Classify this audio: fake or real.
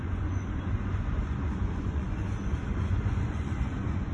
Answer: fake